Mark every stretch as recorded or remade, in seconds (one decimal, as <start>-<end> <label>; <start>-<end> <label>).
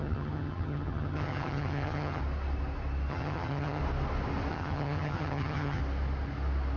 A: 0.0-2.2 remade; 2.2-3.1 recorded; 3.1-3.8 remade; 3.8-4.5 recorded; 4.5-5.8 remade; 5.8-6.8 recorded